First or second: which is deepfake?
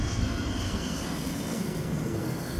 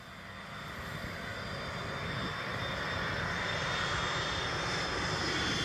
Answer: first